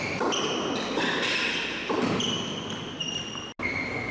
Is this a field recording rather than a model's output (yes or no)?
yes